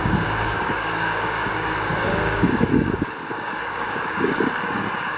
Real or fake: fake